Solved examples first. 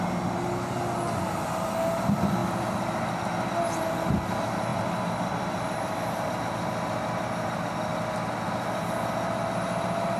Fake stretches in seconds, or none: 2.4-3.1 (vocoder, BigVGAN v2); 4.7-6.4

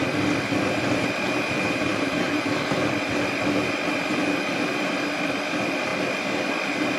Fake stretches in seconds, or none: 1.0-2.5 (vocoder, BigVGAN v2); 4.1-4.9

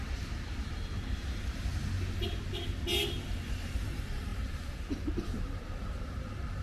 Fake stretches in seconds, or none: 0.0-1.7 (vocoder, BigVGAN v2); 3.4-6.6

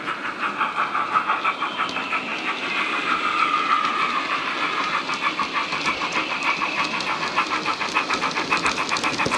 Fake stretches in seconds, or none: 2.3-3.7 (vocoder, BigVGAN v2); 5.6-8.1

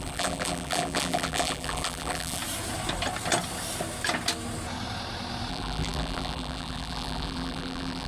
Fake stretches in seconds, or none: 0.0-2.4 (vocoder, BigVGAN v2); 5.5-8.1

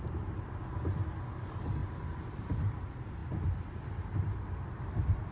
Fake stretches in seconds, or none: 1.8-2.7 (vocoder, BigVGAN v2)

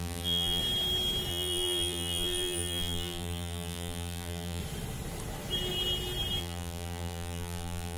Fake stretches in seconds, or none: 0.0-0.6 (vocoder, BigVGAN v2); 1.3-4.6; 6.4-8.0